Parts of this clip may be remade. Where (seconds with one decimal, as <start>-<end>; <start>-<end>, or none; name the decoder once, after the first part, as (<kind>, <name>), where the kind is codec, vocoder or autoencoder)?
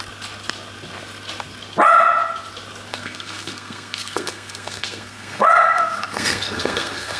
2.9-7.2 (codec, SNAC)